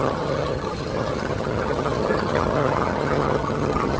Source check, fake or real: fake